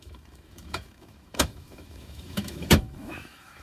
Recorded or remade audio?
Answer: remade